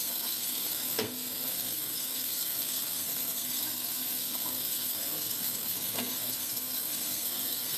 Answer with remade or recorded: remade